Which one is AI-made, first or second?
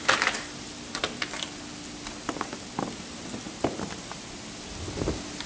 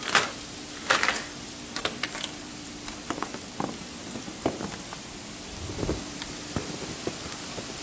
second